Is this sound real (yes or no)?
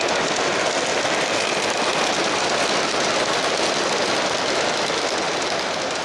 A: yes